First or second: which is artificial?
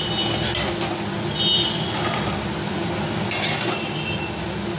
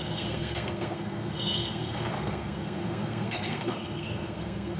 second